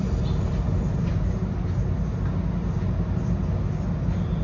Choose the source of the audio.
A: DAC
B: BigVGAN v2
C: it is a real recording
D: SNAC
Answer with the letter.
C